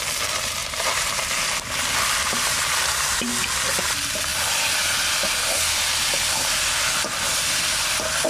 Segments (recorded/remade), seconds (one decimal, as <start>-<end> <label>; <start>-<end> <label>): 0.0-0.6 recorded; 0.6-3.3 remade; 3.3-8.3 recorded